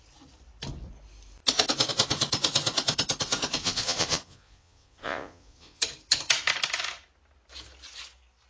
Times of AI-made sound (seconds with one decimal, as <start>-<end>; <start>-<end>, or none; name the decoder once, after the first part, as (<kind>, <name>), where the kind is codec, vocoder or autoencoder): 3.6-5.8 (vocoder, Vocos)